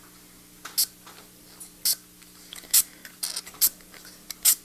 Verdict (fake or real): real